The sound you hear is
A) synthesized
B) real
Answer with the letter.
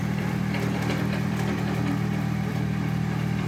A